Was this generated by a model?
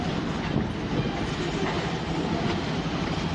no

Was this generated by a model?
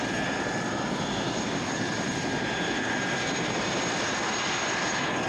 no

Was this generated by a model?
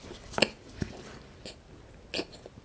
no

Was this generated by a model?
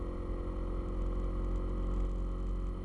no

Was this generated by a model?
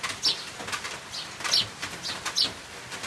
no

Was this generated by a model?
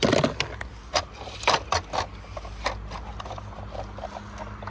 no